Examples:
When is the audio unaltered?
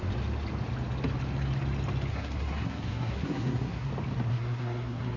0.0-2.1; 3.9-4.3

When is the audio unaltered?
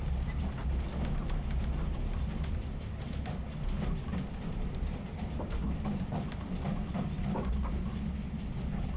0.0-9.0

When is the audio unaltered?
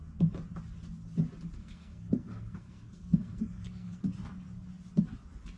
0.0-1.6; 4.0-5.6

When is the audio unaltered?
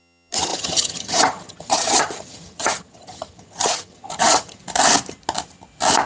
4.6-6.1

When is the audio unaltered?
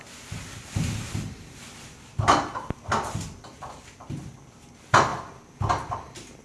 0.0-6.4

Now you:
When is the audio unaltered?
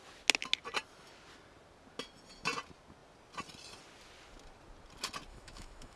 0.0-5.3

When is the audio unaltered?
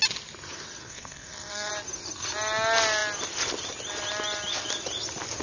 0.0-0.8; 1.7-5.4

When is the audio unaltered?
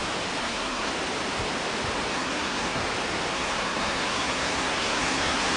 0.0-0.4; 0.9-2.1; 2.8-3.3